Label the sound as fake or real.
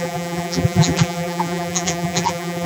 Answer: fake